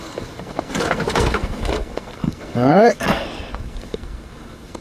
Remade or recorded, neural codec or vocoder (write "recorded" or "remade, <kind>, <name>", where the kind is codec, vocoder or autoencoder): remade, codec, SNAC